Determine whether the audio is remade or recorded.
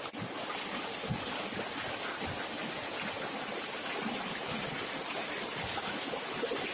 recorded